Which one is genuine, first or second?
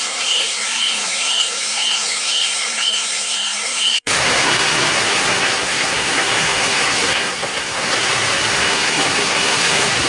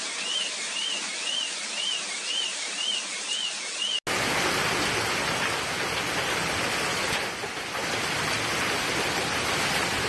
second